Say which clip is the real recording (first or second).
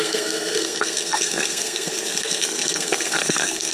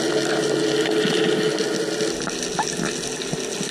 second